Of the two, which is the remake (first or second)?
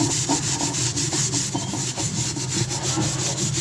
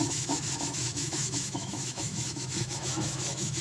second